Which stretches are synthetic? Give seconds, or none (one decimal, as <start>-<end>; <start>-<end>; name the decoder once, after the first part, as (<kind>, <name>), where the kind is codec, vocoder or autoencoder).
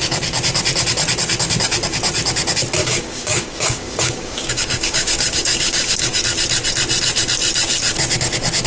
2.8-6.2 (codec, DAC)